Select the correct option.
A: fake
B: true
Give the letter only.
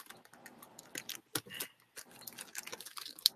B